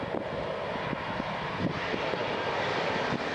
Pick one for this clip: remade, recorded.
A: remade